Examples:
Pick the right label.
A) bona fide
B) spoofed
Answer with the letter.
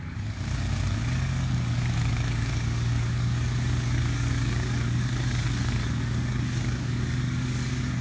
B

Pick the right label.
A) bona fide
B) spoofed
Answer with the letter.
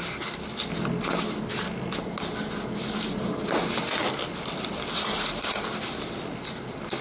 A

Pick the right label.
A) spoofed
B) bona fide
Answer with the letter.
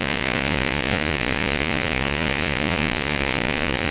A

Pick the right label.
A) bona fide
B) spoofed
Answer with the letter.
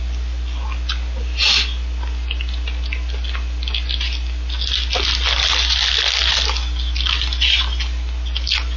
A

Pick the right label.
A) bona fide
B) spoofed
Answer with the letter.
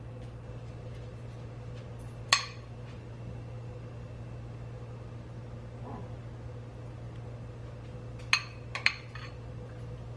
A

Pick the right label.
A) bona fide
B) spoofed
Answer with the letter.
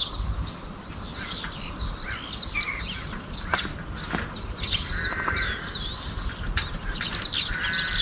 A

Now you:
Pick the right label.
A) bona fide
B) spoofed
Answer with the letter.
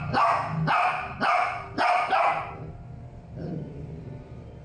B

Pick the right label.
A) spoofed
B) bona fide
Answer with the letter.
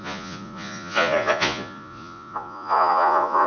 A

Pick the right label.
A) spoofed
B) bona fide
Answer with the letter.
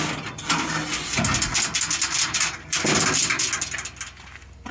B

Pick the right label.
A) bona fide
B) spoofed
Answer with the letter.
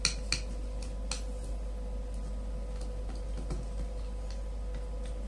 A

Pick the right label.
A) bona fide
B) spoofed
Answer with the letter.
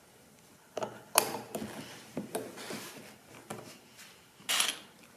A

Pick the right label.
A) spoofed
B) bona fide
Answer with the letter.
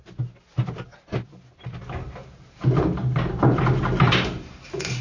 B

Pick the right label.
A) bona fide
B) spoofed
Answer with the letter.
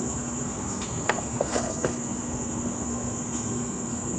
B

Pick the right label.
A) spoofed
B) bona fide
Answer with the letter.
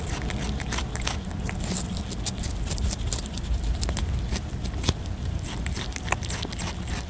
B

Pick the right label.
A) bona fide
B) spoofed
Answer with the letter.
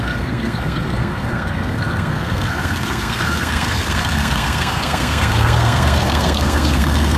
B